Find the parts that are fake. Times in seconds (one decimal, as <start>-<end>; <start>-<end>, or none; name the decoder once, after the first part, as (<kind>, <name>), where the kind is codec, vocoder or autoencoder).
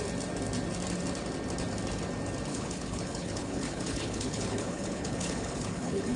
2.5-6.2 (codec, HILCodec)